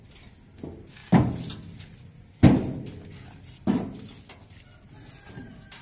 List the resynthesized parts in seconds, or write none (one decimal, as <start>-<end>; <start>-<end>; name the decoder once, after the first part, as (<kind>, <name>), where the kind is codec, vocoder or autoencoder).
none